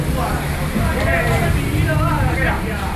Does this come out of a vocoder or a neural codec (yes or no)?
no